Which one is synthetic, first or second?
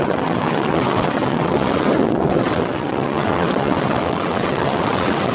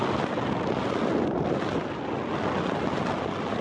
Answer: first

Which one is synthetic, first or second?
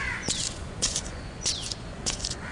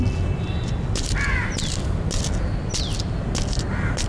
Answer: first